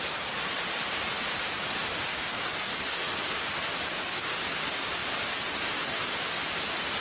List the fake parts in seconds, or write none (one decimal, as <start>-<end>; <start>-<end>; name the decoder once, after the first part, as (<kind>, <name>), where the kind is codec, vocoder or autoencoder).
2.1-3.0 (codec, DAC); 3.7-4.4